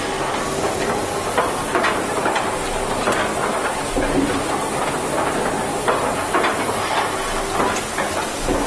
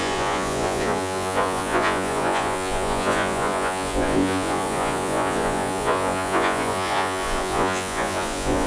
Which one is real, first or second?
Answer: first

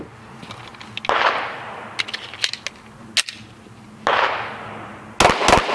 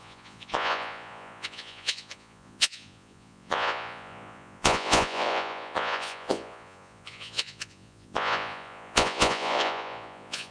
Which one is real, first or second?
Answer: first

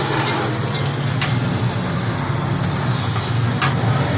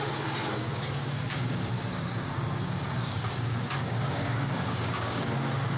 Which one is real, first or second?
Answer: first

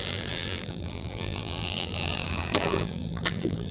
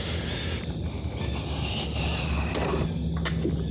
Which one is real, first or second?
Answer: second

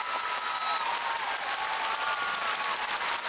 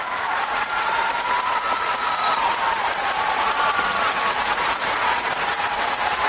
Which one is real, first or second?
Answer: first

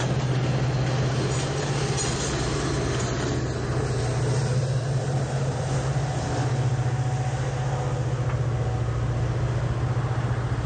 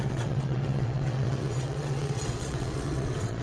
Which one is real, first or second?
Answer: first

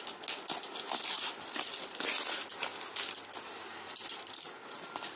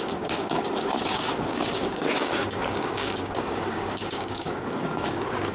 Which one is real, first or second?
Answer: first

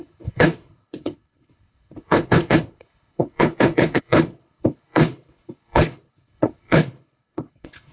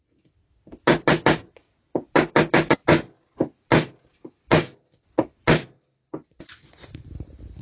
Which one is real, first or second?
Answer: second